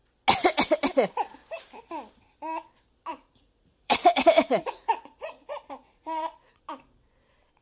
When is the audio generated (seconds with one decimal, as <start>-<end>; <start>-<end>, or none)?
3.1-6.6